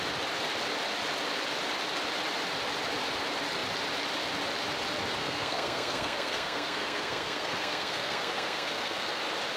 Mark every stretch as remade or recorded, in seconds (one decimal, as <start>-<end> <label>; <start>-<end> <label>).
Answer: 0.0-5.2 recorded; 5.2-9.2 remade; 9.2-9.6 recorded